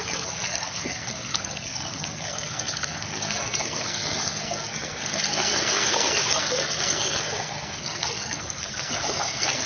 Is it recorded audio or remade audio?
remade